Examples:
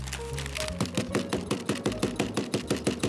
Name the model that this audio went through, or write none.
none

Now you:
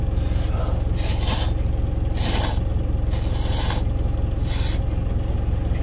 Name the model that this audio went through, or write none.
none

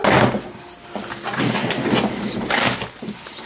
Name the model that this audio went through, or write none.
none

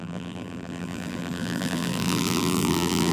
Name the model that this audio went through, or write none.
vocoder, BigVGAN v2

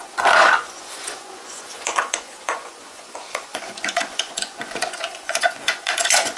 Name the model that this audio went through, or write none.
vocoder, Vocos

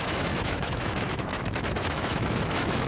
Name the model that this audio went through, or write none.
autoencoder, DAC-VAE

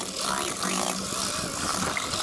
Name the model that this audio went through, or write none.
none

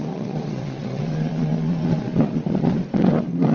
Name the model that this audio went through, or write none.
vocoder, Vocos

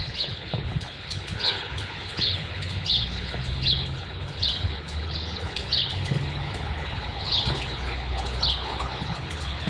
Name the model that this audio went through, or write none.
codec, HILCodec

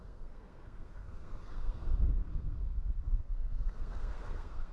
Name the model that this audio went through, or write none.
codec, SNAC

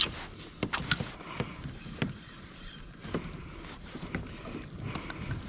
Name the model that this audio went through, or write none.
vocoder, BigVGAN v2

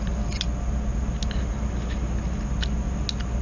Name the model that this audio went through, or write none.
none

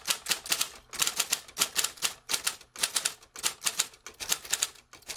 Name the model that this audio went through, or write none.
none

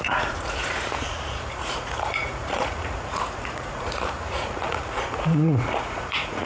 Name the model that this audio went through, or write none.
vocoder, Vocos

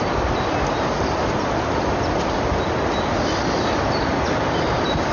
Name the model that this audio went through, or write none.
none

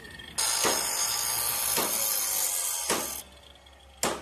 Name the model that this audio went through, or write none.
none